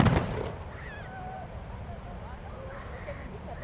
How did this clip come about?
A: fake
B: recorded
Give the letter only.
B